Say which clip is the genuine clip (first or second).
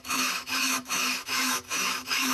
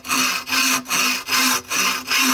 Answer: second